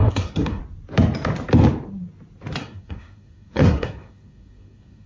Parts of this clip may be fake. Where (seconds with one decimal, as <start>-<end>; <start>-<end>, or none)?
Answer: 0.0-0.6; 2.6-5.1

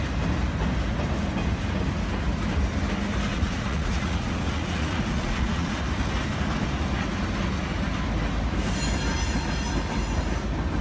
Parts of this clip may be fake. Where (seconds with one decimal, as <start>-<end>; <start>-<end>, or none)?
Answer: 3.3-5.8

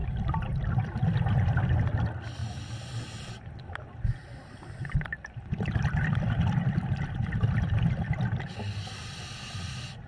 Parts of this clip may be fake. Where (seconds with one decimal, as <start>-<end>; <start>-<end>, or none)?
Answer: none

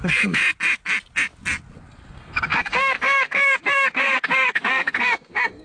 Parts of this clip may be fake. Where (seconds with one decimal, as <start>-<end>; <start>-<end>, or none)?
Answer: 0.0-0.4; 2.1-5.6

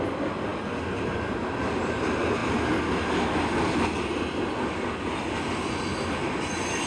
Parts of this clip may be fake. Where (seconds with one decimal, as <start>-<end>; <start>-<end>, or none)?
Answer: none

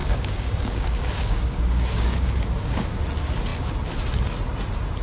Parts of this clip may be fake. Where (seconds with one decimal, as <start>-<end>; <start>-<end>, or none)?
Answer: 0.0-3.0

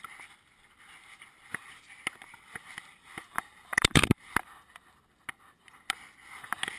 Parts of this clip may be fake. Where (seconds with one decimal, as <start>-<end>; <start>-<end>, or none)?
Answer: 3.1-4.3

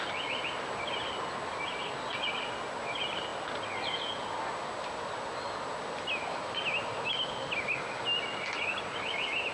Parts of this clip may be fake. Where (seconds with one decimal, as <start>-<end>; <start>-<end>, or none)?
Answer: none